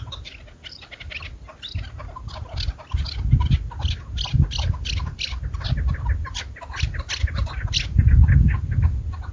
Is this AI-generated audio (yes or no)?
no